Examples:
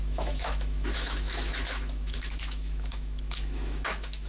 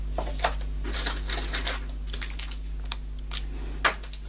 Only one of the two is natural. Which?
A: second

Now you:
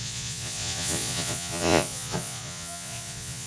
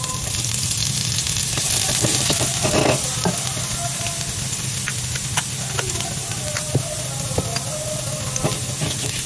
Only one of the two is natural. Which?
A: second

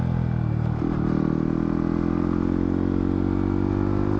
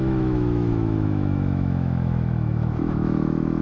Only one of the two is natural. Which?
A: first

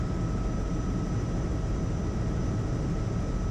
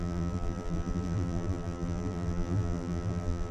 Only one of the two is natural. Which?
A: first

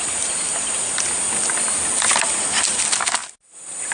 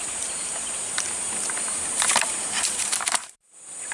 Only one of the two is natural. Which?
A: first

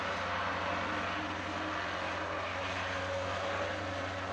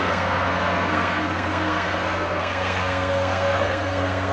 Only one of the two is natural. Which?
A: first